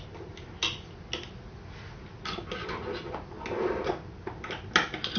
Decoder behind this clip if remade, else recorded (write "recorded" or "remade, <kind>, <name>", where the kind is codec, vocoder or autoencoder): recorded